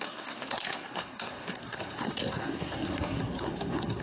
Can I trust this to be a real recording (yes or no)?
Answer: no